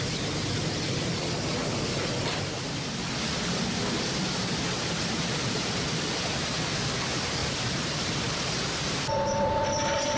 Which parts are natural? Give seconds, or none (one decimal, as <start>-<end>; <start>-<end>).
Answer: 1.6-4.9